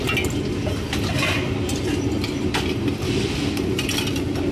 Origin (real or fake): real